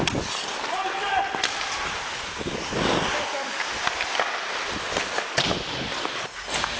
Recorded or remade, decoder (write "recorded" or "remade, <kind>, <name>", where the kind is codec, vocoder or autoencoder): recorded